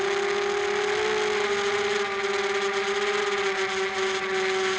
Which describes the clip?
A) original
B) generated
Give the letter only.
A